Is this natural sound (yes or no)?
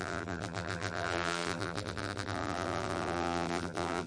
no